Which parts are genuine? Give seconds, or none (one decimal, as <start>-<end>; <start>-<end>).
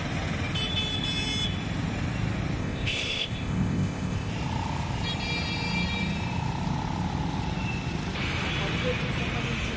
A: 0.0-2.6; 4.3-9.8